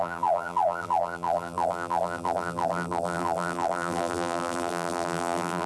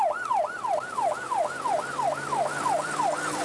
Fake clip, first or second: first